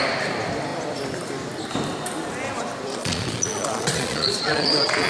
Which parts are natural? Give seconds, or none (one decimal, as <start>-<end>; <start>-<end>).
0.0-2.9